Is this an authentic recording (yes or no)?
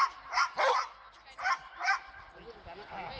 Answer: yes